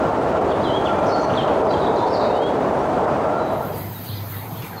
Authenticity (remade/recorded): remade